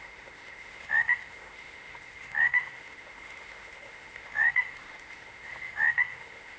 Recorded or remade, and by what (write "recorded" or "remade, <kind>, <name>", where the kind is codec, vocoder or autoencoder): remade, autoencoder, DAC-VAE